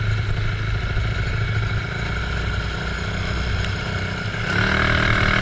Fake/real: real